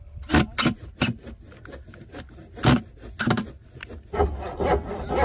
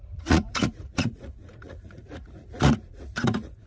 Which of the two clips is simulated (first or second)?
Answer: second